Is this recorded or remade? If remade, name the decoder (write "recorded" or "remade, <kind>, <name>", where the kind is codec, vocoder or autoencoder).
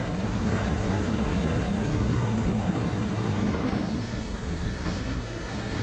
remade, codec, SNAC